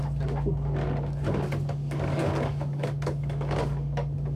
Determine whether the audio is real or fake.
fake